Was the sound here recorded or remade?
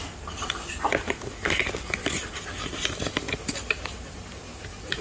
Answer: recorded